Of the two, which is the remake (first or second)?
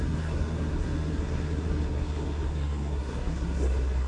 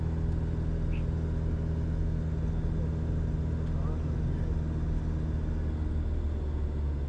first